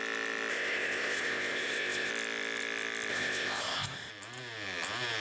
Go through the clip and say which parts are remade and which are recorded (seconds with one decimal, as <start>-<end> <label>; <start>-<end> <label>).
0.0-0.5 recorded; 0.5-2.1 remade; 2.1-3.1 recorded; 3.1-4.1 remade; 4.1-5.2 recorded